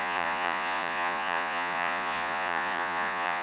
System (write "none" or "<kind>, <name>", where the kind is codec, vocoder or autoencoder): vocoder, Vocos